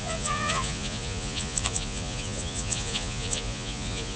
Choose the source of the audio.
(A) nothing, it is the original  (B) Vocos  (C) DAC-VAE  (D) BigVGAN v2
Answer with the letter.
B